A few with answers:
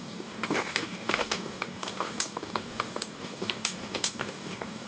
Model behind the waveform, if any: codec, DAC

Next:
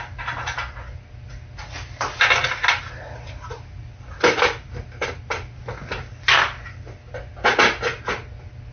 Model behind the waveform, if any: none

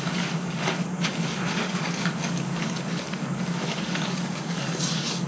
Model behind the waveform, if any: codec, DAC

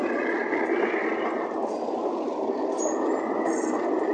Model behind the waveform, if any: none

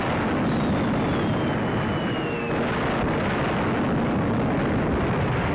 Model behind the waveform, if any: none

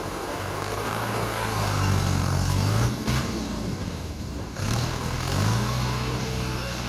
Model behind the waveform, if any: codec, DAC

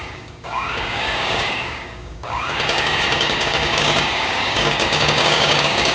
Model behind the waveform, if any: codec, DAC